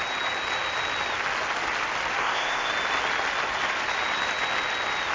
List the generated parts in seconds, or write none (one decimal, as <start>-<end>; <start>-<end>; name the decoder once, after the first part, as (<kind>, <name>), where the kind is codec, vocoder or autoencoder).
2.2-2.7 (codec, ZipCodec)